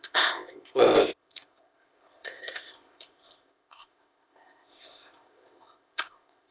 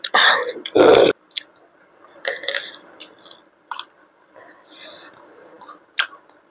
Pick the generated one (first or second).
first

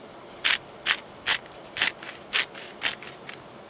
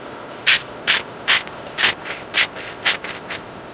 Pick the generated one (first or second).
second